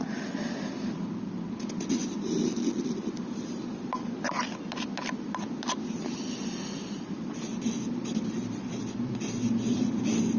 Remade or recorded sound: recorded